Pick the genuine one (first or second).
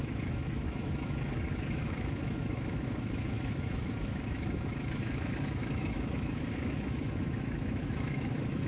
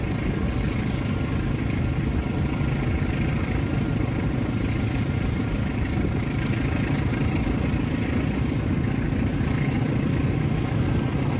second